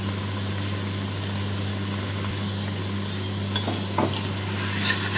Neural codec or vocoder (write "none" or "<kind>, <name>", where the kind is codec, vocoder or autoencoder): none